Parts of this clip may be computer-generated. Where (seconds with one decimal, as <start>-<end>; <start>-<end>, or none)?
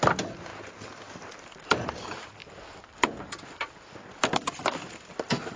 0.0-0.5; 1.1-2.4; 4.4-5.6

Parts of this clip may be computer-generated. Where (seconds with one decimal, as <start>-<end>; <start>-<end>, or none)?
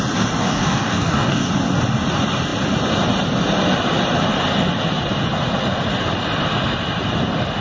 0.4-1.5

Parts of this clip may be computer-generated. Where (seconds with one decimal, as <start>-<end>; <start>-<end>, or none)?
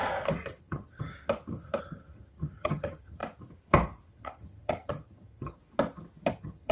0.6-1.1; 1.8-3.2; 4.1-5.6; 6.3-6.7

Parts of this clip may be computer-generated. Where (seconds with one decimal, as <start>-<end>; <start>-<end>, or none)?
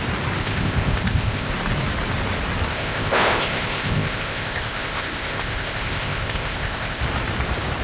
0.4-1.5; 2.7-7.0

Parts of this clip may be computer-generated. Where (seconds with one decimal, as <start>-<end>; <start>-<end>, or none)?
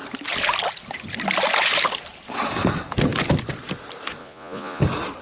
4.2-4.8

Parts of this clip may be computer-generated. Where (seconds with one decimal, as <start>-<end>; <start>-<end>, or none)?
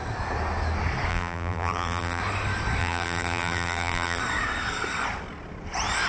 1.1-2.2; 2.8-4.2